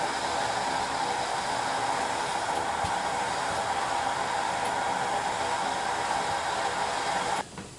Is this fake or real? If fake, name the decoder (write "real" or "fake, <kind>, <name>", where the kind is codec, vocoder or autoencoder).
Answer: real